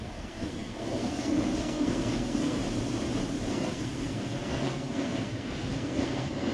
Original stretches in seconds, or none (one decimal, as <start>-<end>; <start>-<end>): 2.6-3.5